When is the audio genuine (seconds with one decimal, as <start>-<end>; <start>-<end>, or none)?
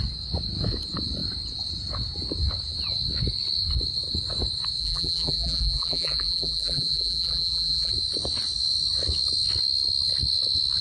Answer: 0.0-4.8; 7.9-10.8